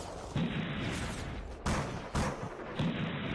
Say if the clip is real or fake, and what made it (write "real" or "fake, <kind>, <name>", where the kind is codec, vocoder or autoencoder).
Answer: real